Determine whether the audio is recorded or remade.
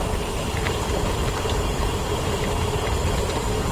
remade